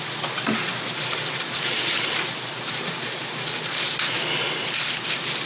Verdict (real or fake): fake